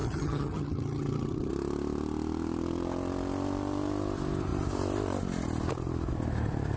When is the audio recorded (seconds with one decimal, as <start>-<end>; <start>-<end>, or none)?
1.5-6.8